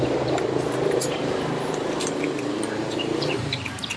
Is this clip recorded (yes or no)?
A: no